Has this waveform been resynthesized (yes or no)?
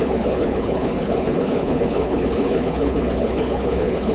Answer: yes